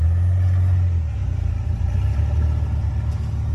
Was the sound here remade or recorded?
recorded